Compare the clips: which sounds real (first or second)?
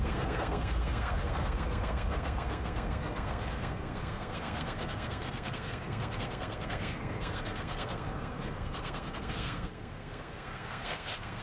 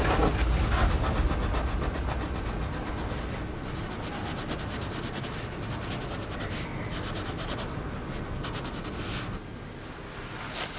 second